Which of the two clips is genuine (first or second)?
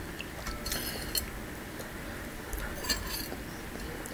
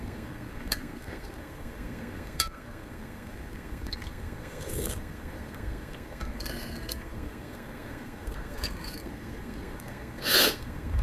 first